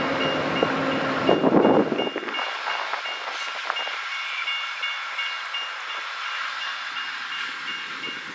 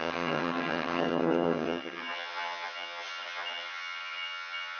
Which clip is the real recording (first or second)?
first